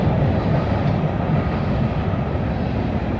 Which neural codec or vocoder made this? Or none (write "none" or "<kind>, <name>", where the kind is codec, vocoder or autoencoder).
none